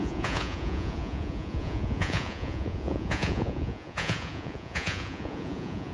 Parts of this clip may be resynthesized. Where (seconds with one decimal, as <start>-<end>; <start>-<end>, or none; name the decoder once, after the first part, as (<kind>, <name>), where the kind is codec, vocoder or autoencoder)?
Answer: 0.0-5.9 (vocoder, Vocos)